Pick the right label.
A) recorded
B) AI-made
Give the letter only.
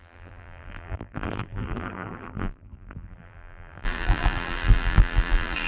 B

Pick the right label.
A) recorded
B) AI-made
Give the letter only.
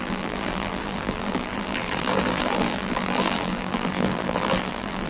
B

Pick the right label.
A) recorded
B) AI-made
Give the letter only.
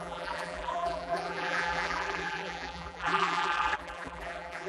B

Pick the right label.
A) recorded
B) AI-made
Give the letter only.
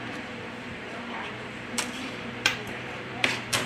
B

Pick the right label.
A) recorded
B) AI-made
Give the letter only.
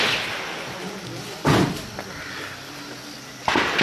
A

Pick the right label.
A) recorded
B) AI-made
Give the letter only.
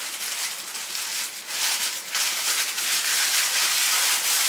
A